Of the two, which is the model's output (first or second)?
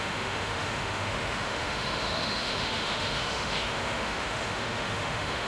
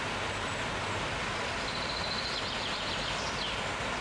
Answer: first